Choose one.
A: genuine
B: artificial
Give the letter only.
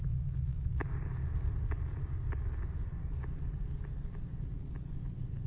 A